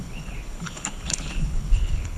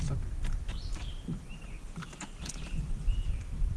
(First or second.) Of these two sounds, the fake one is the first